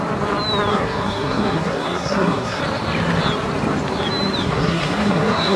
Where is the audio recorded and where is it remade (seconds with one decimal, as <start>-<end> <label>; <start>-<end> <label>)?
0.0-0.7 recorded; 0.7-2.6 remade; 2.6-4.4 recorded; 4.4-5.6 remade